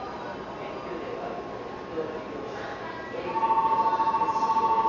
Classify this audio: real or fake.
real